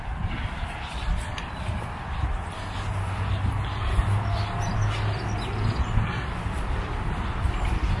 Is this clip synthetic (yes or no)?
no